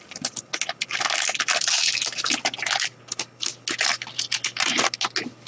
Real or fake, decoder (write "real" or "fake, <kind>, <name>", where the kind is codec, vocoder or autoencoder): real